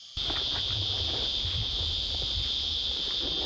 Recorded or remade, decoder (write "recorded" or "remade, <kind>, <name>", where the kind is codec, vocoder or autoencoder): recorded